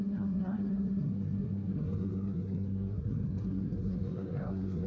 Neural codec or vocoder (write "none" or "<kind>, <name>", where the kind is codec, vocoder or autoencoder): codec, SNAC